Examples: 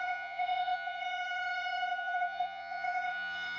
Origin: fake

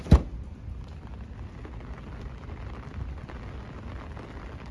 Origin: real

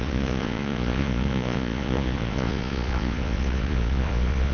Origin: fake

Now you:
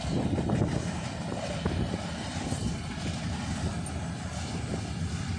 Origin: real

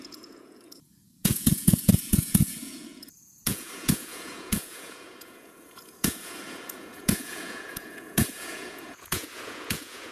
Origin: fake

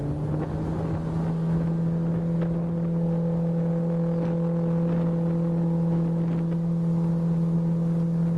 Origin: real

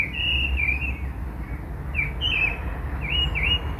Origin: real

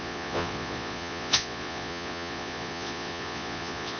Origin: fake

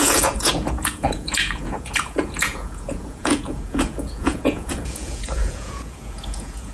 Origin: fake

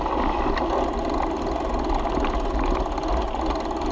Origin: real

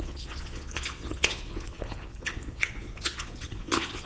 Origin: fake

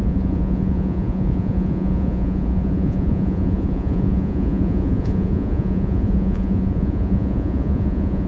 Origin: fake